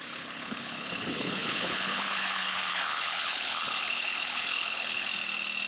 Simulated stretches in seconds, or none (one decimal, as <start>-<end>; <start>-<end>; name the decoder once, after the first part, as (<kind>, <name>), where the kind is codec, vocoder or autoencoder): 0.0-5.1 (codec, HILCodec)